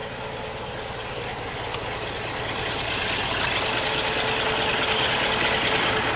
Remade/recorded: recorded